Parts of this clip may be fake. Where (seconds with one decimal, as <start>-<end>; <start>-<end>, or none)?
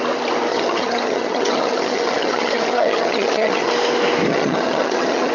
0.5-3.7; 4.3-5.3